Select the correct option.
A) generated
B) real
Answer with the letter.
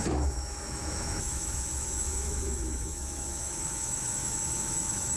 A